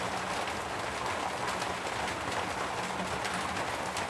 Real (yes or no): yes